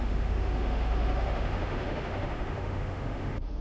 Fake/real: fake